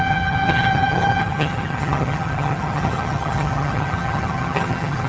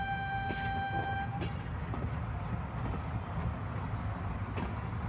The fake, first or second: first